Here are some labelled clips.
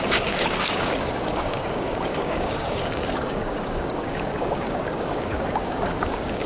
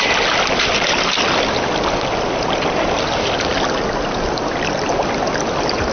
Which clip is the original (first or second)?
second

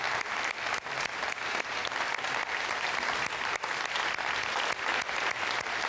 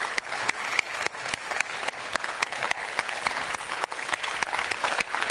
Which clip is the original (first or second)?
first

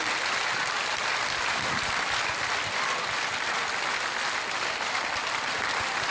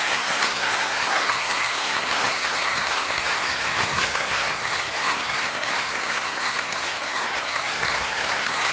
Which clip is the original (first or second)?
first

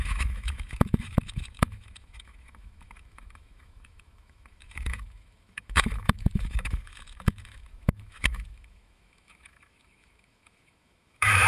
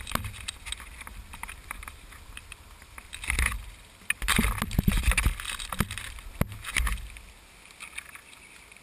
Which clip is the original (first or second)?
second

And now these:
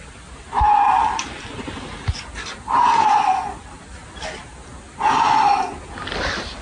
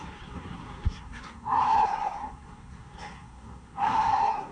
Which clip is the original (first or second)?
first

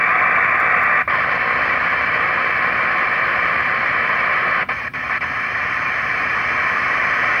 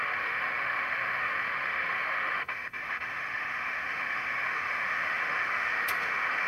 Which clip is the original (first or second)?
first